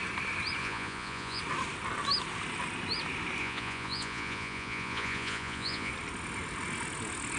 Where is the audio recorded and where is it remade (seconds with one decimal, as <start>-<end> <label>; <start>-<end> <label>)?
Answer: 0.0-0.6 recorded; 0.6-1.4 remade; 1.4-3.4 recorded; 3.4-5.9 remade; 5.9-7.4 recorded